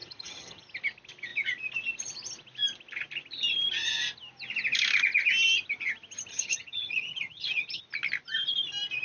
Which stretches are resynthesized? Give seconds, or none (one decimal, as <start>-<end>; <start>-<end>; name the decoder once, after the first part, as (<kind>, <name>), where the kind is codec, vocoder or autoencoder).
0.0-0.6 (vocoder, HiFi-GAN); 6.3-7.8